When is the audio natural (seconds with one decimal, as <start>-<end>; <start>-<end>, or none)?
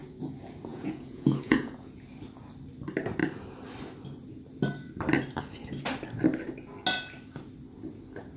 0.0-0.7; 2.0-8.4